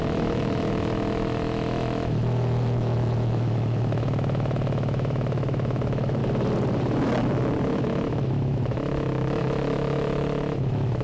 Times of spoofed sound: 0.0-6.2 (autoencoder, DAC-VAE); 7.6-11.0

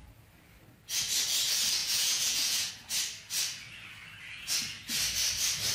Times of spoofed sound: 1.8-2.7 (vocoder, Vocos)

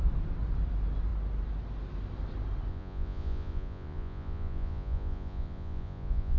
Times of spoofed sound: 2.7-6.4 (vocoder, Vocos)

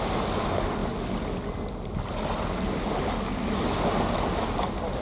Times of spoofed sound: none